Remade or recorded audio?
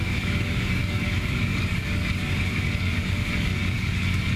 remade